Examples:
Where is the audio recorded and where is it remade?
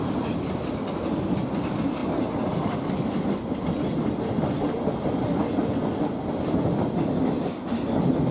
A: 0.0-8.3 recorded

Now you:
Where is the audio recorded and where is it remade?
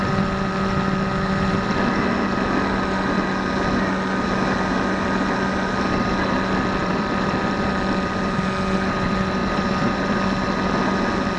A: 0.0-6.8 recorded; 6.8-7.5 remade; 7.5-9.4 recorded; 9.4-10.2 remade; 10.2-11.4 recorded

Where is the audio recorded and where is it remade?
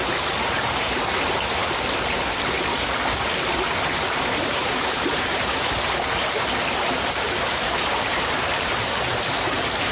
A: 0.0-1.6 remade; 1.6-3.8 recorded; 3.8-9.9 remade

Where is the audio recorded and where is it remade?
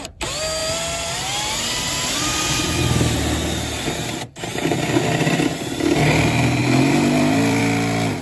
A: 0.0-4.5 recorded; 4.5-6.0 remade; 6.0-6.6 recorded; 6.6-7.6 remade; 7.6-8.2 recorded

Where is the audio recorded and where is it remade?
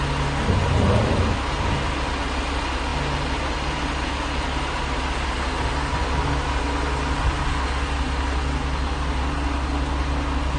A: 0.0-10.6 recorded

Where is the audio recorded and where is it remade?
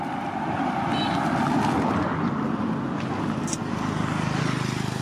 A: 0.0-5.0 recorded